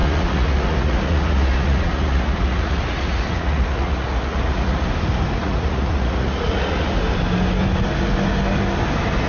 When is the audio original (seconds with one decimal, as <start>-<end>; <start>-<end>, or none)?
4.9-5.4; 6.9-9.3